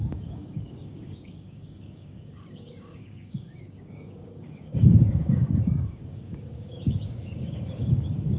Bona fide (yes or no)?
no